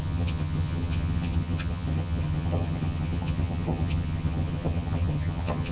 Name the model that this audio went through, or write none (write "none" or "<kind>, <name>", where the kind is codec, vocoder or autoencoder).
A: vocoder, HiFi-GAN